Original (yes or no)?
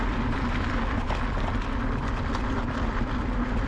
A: yes